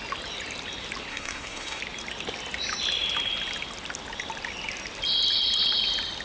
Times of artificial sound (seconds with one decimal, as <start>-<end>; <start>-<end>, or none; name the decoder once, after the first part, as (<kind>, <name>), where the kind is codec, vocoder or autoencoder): 1.1-1.8 (codec, SNAC)